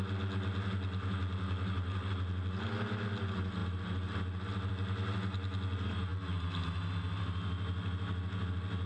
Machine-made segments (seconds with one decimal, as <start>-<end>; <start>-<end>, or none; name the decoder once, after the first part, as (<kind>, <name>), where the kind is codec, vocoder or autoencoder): none